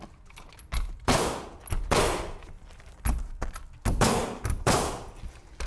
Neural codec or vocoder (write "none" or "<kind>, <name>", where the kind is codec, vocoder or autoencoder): none